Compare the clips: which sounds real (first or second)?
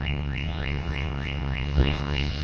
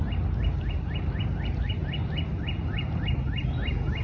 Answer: second